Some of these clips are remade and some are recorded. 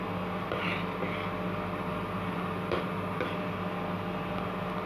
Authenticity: recorded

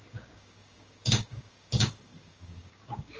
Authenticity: remade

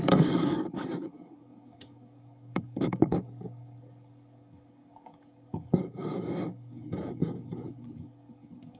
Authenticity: remade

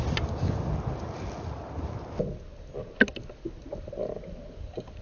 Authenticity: recorded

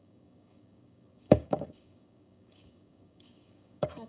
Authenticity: remade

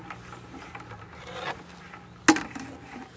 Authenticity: recorded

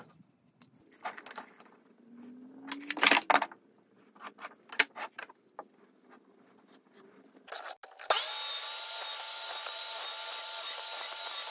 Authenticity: recorded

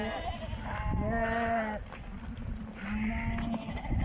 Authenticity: recorded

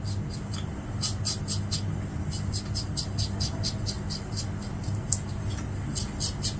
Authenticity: recorded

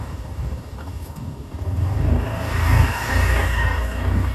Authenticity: remade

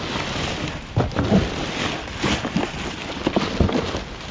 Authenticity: recorded